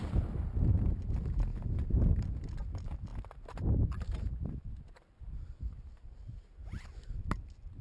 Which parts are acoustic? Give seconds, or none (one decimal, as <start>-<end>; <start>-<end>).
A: 0.0-7.8